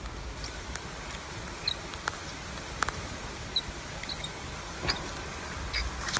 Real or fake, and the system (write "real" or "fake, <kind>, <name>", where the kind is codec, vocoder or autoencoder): real